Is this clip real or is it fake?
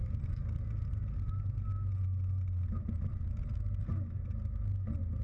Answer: real